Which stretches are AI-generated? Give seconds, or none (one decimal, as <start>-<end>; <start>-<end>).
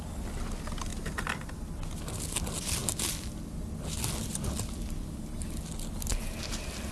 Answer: none